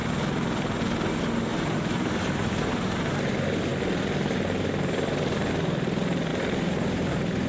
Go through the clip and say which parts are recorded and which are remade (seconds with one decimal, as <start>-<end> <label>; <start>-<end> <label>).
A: 0.0-1.5 recorded; 1.5-3.2 remade; 3.2-6.3 recorded; 6.3-7.5 remade